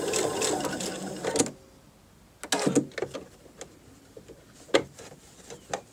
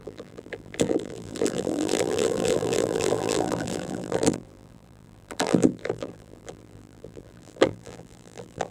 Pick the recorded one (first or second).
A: first